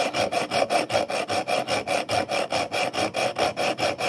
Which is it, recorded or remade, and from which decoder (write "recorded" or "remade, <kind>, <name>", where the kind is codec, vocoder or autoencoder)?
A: recorded